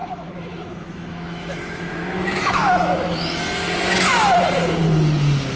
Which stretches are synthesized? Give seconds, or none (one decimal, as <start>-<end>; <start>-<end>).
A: 0.0-3.4